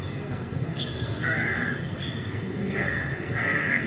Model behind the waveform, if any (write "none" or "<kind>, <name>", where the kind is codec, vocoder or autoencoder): codec, SNAC